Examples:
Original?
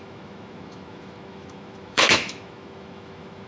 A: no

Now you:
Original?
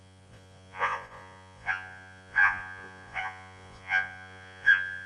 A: no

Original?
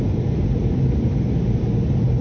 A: yes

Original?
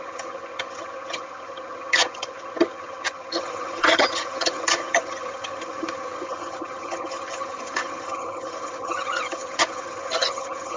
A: no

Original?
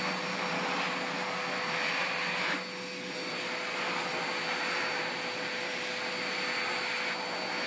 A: yes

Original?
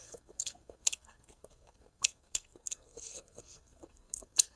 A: no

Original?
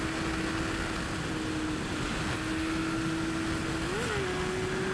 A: yes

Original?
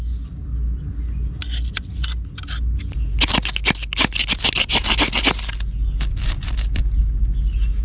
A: yes